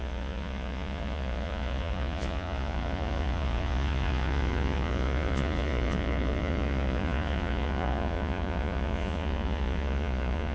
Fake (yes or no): yes